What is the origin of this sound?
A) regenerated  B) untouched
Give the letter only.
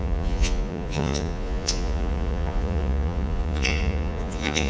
A